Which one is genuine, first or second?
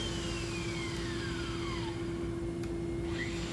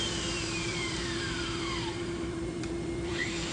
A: first